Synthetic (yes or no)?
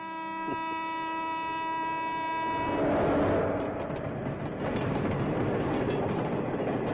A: no